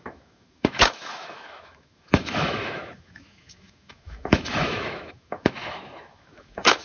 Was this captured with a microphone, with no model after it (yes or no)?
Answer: no